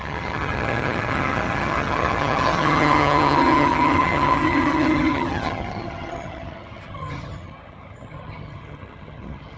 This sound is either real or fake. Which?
fake